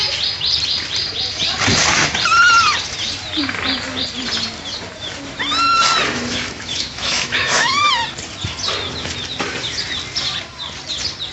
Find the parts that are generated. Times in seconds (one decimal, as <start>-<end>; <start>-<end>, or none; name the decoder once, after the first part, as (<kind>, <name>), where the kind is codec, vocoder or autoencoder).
6.0-7.9 (autoencoder, DAC-VAE)